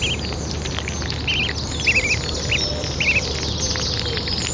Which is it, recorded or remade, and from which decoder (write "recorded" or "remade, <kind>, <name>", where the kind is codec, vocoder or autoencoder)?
recorded